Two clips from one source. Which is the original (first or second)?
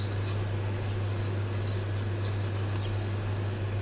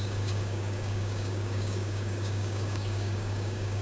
first